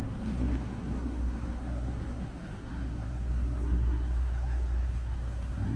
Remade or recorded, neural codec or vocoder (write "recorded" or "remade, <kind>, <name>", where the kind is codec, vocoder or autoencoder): remade, codec, SNAC